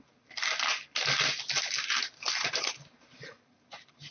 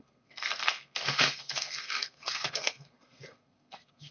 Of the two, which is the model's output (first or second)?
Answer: second